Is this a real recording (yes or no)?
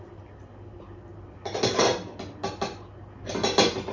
yes